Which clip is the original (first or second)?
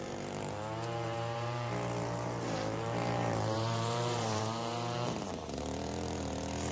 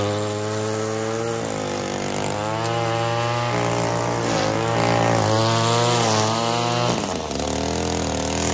second